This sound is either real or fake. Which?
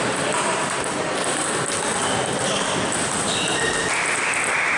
fake